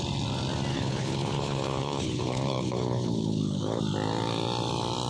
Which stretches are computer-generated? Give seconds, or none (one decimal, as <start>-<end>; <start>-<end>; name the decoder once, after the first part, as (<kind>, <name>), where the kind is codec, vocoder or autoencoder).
0.7-3.8 (codec, HILCodec)